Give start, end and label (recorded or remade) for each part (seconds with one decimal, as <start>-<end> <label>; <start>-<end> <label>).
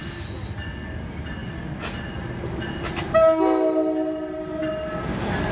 0.0-5.5 recorded